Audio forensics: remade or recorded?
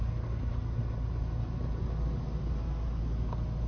recorded